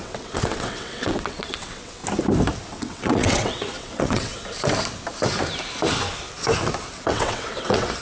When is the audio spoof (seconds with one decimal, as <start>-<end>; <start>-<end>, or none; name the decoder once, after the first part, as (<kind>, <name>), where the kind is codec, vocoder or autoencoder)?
0.0-2.0 (vocoder, WaveNeXt); 2.7-4.3; 6.9-8.0